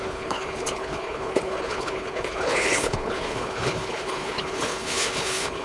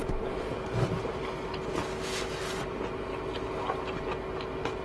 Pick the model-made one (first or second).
first